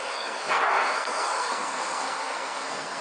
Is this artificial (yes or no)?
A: yes